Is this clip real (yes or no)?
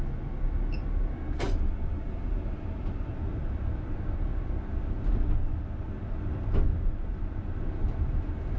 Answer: yes